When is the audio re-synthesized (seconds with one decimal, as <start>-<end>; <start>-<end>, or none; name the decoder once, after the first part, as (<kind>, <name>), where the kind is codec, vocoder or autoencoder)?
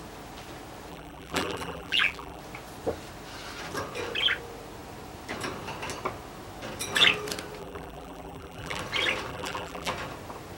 0.9-2.4 (vocoder, BigVGAN v2); 7.6-8.8; 9.3-9.9